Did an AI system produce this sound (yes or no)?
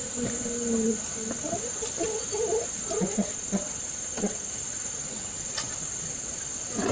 no